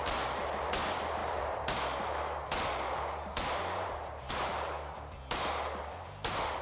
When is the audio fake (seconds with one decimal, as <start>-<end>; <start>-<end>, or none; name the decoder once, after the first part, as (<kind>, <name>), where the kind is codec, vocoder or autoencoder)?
none